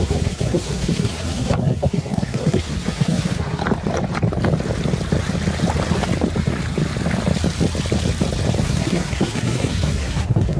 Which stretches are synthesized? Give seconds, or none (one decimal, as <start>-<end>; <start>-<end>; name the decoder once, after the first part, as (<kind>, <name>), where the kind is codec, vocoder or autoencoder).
0.0-3.6 (codec, SNAC); 8.6-10.6